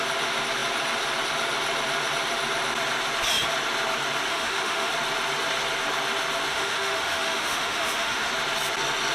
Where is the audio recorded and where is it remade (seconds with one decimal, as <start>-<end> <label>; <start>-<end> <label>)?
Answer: 0.0-4.3 recorded; 4.3-4.9 remade; 4.9-6.5 recorded; 6.5-8.3 remade; 8.3-9.1 recorded